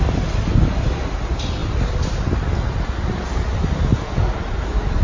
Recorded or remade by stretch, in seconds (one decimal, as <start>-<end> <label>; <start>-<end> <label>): 0.0-5.0 recorded